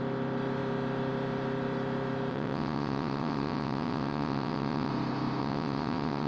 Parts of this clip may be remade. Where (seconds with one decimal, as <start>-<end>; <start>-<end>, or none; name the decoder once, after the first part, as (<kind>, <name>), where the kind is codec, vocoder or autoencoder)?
2.3-4.9 (vocoder, WaveNeXt); 5.4-6.3